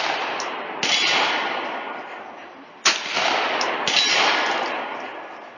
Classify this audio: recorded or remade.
recorded